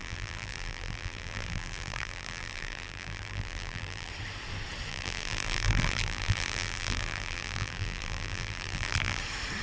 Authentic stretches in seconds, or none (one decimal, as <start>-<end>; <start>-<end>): 4.1-4.9; 9.2-9.6